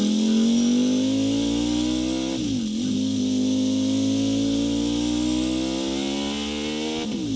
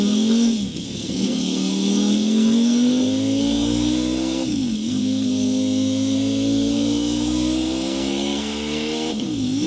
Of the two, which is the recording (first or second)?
first